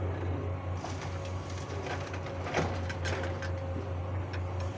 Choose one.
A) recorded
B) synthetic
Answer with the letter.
A